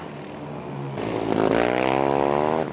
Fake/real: real